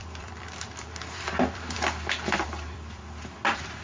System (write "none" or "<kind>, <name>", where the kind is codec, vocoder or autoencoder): vocoder, BigVGAN v2